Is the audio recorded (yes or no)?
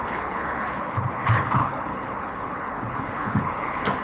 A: no